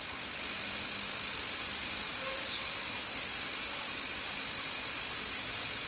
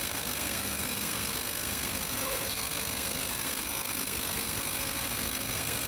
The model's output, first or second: second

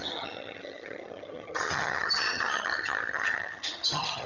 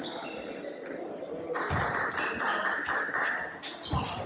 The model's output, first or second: first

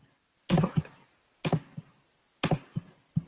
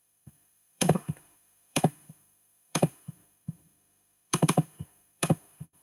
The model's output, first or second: second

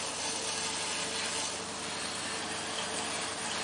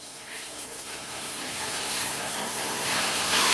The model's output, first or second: second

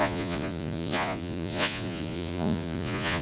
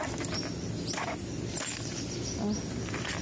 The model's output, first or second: first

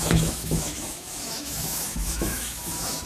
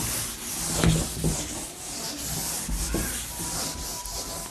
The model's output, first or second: first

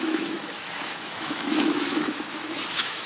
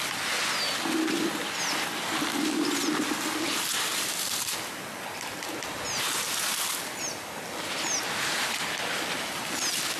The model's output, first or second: first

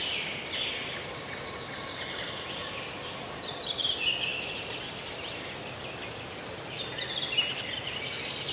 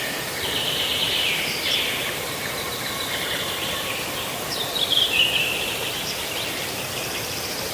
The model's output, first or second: second